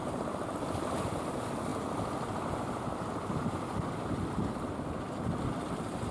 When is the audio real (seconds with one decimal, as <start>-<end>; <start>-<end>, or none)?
1.2-1.7; 5.4-6.1